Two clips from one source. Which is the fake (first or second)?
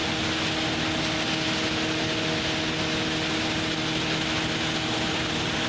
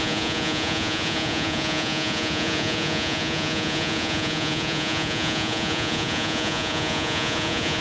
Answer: second